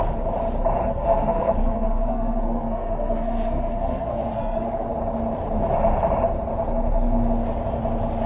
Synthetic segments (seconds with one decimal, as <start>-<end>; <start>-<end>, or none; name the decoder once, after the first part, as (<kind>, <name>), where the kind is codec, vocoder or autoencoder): 0.9-4.9 (codec, SNAC)